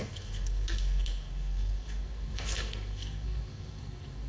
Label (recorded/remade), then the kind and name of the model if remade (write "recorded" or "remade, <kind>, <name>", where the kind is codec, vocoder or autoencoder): remade, codec, SNAC